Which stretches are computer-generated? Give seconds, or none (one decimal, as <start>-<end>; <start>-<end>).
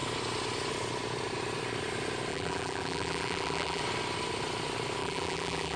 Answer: 2.3-3.8; 5.0-5.8